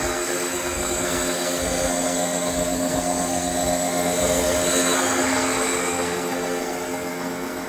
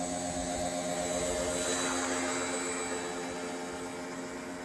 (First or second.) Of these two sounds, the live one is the second